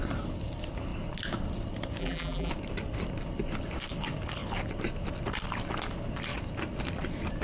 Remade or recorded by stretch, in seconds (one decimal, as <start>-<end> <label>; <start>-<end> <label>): 0.0-2.0 recorded; 2.0-2.5 remade; 2.5-7.4 recorded